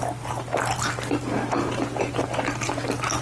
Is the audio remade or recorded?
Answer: recorded